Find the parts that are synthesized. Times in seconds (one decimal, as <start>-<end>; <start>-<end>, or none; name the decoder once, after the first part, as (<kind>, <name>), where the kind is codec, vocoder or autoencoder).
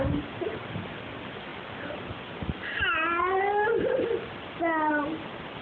none